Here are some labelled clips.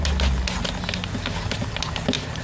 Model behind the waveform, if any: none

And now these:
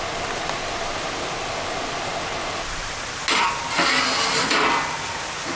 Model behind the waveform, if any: none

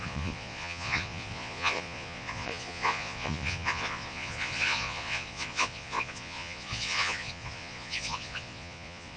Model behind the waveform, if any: vocoder, Vocos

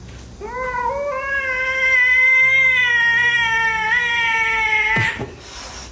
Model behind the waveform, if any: none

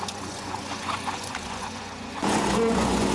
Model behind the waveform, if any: vocoder, Vocos